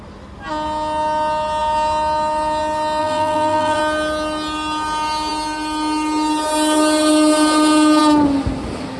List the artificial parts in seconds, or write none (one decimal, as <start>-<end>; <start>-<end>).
3.0-3.8